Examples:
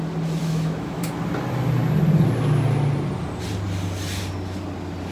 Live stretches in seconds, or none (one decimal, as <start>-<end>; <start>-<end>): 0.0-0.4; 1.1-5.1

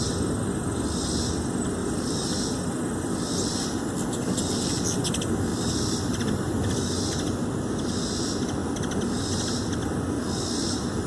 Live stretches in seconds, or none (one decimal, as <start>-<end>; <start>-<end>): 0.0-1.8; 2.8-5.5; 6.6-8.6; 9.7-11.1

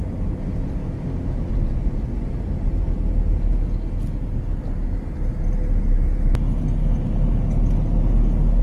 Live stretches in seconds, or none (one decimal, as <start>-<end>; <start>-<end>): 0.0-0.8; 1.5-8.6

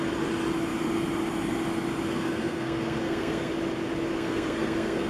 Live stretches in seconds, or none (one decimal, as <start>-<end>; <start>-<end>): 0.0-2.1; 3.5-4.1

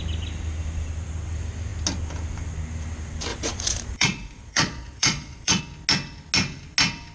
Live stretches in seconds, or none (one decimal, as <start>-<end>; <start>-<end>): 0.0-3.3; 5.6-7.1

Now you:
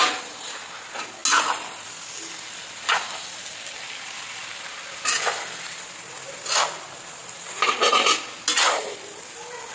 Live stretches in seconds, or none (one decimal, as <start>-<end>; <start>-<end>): 0.6-9.7